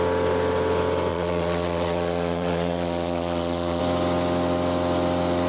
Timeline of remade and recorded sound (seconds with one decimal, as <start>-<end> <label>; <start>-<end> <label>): 0.0-1.1 recorded; 1.1-3.8 remade; 3.8-5.5 recorded